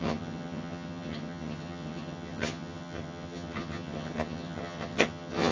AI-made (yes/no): yes